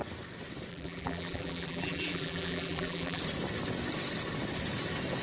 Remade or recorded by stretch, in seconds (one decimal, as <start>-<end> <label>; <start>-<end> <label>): 0.0-0.7 recorded; 0.7-3.2 remade; 3.2-5.2 recorded